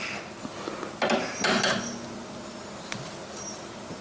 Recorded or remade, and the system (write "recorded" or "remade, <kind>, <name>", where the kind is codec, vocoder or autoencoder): recorded